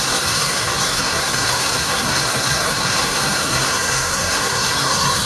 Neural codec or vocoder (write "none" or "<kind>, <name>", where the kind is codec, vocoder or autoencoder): codec, SNAC